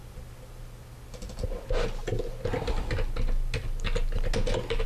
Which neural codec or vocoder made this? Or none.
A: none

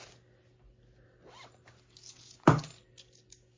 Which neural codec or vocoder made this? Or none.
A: none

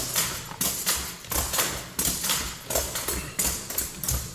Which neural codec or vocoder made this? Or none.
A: none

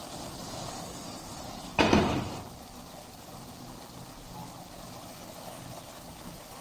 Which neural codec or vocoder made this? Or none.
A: none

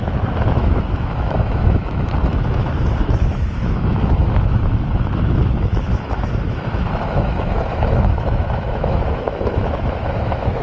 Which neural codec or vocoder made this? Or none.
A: autoencoder, DAC-VAE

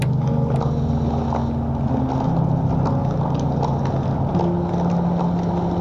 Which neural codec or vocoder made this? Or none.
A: none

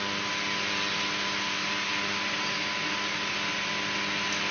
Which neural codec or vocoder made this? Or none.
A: none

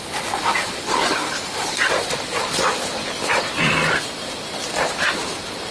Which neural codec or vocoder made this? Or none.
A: none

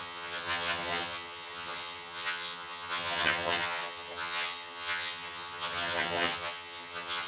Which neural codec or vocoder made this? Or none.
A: vocoder, HiFi-GAN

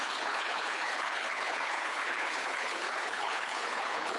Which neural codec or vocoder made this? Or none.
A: codec, HILCodec